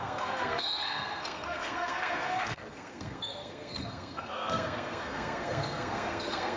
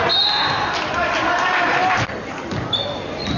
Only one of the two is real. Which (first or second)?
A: second